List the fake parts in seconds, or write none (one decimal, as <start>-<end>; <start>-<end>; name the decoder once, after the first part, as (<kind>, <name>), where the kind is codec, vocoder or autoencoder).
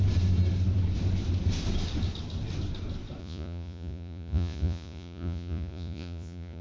3.2-6.6 (vocoder, Vocos)